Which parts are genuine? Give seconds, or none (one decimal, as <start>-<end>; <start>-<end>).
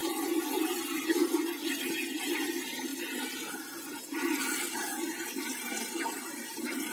0.0-6.9